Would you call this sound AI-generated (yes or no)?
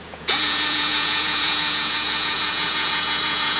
yes